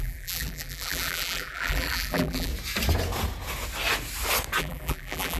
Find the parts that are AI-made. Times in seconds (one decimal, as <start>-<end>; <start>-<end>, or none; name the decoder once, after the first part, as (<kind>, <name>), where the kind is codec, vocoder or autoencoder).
0.0-2.5 (vocoder, BigVGAN v2); 4.6-5.4